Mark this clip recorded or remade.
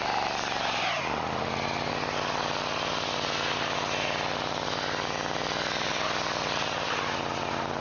recorded